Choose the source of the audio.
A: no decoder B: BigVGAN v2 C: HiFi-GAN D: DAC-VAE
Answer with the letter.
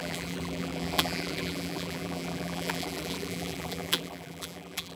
B